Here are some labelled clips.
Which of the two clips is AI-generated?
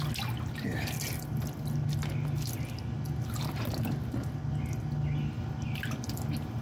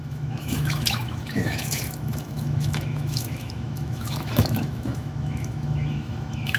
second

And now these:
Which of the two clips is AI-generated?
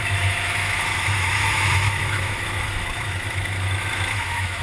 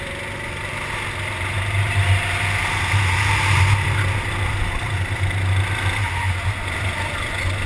first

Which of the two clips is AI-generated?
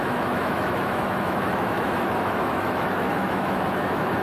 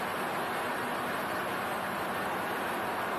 first